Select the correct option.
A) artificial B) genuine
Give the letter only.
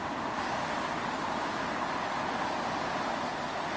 B